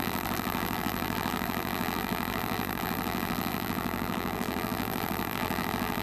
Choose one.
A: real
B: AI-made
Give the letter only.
B